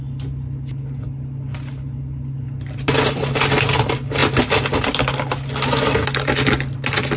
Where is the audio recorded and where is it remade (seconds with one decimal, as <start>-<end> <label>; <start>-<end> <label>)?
0.0-7.2 recorded